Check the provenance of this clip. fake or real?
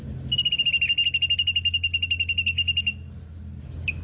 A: real